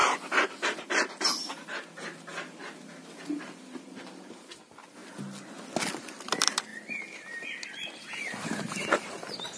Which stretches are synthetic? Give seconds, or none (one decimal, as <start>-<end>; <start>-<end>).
3.2-5.0; 6.0-6.7; 9.1-9.6

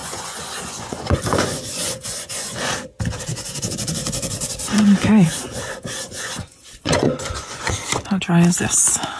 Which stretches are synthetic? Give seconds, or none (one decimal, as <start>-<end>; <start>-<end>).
0.0-2.7; 3.3-7.7

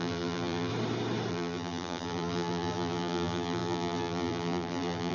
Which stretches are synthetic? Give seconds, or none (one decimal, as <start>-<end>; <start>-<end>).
0.0-0.7; 1.3-5.1